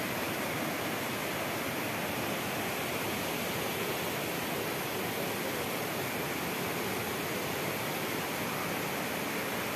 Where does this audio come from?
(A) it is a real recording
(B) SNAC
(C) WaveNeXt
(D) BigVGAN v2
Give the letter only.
A